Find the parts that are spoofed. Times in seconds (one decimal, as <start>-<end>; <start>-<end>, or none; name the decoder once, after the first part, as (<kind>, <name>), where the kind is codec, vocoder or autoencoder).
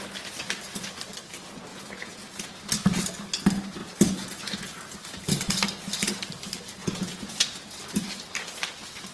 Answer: 1.7-2.6 (vocoder, Vocos); 3.8-5.0; 6.8-7.8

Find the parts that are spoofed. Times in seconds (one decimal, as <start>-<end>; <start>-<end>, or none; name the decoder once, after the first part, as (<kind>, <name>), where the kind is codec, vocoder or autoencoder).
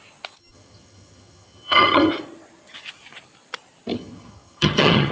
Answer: 0.4-2.1 (vocoder, HiFi-GAN); 3.9-5.1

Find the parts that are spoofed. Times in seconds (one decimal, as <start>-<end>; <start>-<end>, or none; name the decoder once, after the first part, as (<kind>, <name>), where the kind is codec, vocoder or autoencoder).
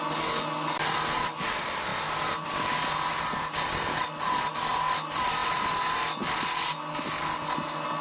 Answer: none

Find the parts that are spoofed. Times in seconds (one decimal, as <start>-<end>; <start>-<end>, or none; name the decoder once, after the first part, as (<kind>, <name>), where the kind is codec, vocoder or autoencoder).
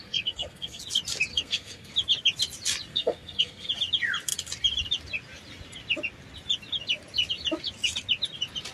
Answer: 0.0-0.8 (codec, SNAC); 1.3-1.9; 2.9-3.7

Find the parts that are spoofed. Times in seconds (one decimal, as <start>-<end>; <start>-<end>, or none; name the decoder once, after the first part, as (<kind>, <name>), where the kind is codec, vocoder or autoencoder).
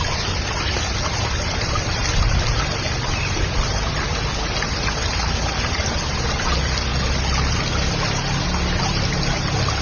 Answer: none